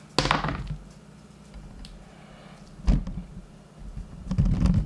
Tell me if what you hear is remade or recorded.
recorded